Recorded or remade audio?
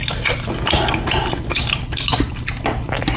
remade